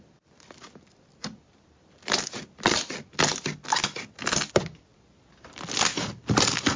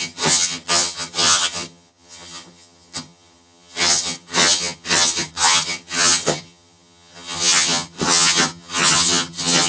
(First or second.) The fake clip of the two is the second